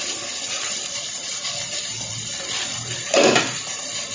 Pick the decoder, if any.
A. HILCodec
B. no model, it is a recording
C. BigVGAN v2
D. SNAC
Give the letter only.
C